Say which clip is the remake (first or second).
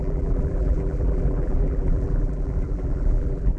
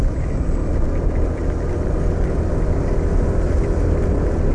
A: first